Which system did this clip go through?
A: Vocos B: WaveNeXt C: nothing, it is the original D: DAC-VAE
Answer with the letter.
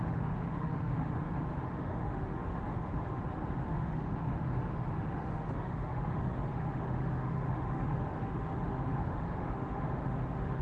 D